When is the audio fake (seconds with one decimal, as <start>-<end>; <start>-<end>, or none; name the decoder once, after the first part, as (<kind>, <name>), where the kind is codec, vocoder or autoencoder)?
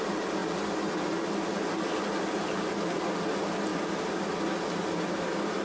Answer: none